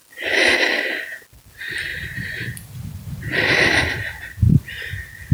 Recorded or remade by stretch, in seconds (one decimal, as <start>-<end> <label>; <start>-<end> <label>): 0.0-0.7 recorded; 0.7-5.3 remade